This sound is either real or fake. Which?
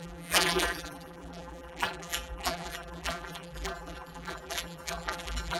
fake